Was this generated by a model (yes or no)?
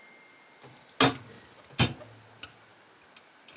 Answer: no